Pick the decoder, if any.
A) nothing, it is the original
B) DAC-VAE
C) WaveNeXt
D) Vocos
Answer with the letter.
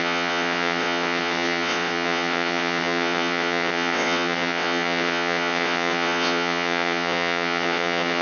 C